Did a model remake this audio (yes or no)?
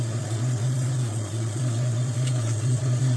yes